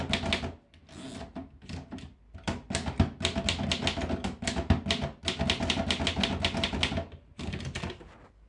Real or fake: real